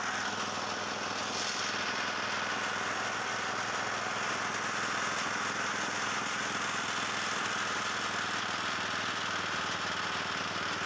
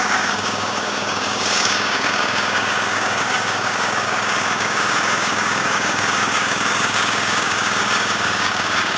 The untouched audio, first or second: first